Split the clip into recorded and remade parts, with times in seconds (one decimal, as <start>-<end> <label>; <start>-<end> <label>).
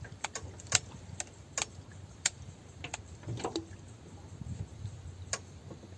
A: 0.0-1.9 recorded; 1.9-2.8 remade; 2.8-6.0 recorded